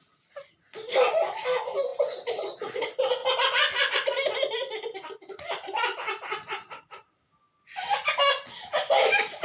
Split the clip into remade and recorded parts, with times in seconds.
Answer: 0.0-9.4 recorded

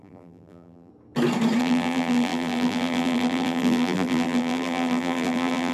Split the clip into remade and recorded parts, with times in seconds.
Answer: 0.0-0.9 remade; 0.9-1.6 recorded; 1.6-5.7 remade

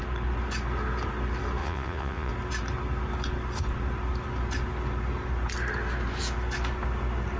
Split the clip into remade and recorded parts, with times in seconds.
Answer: 0.0-1.6 recorded; 1.6-2.3 remade; 2.3-7.4 recorded

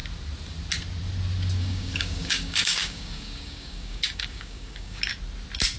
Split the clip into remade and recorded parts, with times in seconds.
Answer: 0.0-1.6 recorded; 1.6-5.1 remade; 5.1-5.8 recorded

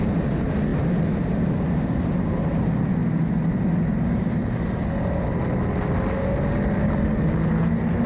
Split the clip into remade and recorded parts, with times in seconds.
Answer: 0.0-8.1 recorded

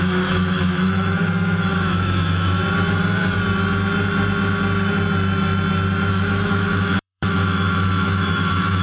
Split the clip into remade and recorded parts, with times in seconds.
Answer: 0.0-2.6 remade; 2.6-6.1 recorded; 6.1-8.8 remade

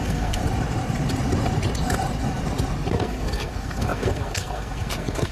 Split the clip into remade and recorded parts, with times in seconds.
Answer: 0.0-0.4 remade; 0.4-2.9 recorded; 2.9-5.3 remade